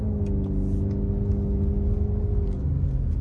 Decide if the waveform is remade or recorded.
recorded